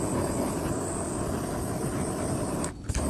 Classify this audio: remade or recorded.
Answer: recorded